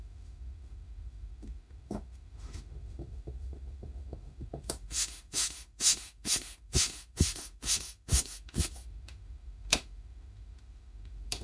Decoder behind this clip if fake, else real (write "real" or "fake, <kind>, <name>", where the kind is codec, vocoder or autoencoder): fake, autoencoder, DAC-VAE